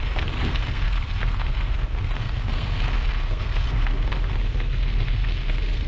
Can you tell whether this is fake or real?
fake